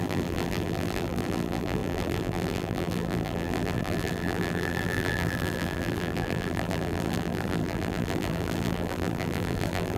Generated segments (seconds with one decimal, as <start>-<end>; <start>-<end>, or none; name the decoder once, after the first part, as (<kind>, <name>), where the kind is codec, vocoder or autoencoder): 0.0-10.0 (vocoder, BigVGAN v2)